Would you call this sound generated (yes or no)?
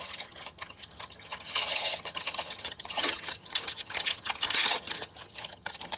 yes